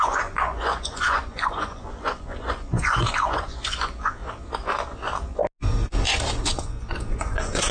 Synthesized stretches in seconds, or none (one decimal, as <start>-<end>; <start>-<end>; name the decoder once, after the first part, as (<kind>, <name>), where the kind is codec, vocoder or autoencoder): 0.0-4.2 (vocoder, Vocos); 6.5-7.7